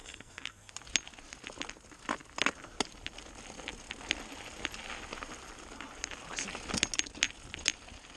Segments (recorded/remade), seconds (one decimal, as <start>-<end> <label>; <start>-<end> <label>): 0.0-0.7 remade; 0.7-8.2 recorded